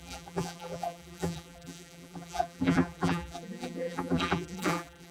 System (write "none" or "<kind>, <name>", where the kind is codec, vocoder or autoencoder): vocoder, BigVGAN v2